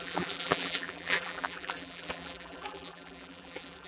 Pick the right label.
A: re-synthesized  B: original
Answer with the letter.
A